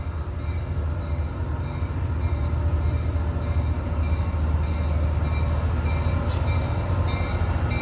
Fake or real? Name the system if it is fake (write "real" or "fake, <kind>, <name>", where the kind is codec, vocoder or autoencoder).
real